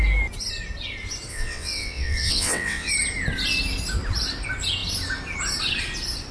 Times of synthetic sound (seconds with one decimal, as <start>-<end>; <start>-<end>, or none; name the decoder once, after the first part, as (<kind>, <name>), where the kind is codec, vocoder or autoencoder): 1.3-2.9 (vocoder, WaveNeXt)